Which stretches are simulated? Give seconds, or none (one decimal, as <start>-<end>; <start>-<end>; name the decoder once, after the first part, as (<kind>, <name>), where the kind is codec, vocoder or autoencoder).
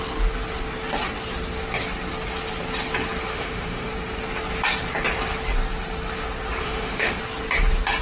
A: 3.3-3.9 (autoencoder, DAC-VAE); 6.6-7.2